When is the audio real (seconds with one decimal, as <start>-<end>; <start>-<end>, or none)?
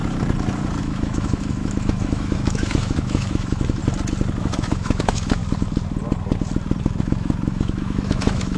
0.0-0.8; 3.8-4.4; 5.4-7.0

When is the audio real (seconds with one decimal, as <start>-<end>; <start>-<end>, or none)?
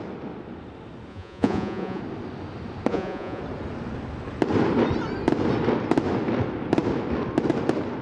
0.0-1.1; 2.0-2.9; 3.4-8.0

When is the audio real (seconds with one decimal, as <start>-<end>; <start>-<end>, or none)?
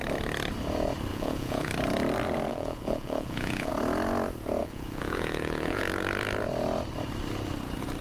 0.0-1.1; 1.7-2.5; 3.7-4.6; 5.8-8.0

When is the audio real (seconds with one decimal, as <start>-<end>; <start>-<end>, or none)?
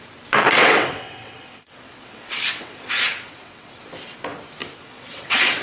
0.0-0.4; 3.8-4.6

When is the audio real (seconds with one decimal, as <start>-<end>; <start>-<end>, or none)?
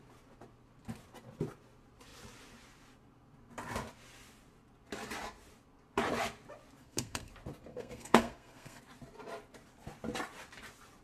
0.0-6.8; 7.3-7.7; 8.8-11.0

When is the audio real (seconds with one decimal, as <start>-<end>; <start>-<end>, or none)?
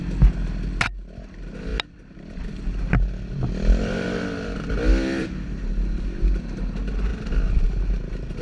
0.0-5.2; 5.7-8.4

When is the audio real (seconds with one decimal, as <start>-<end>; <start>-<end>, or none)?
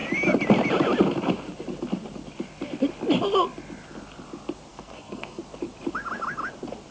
0.0-4.7; 5.4-6.9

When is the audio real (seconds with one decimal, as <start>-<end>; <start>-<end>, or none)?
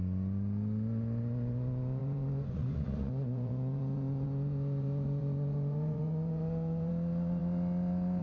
0.0-2.0; 6.9-8.2